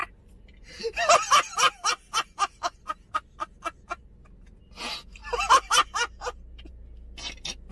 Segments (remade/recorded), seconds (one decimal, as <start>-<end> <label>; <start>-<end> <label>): 0.0-7.7 recorded